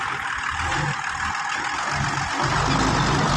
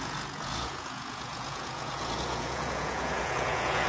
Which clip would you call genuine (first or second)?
first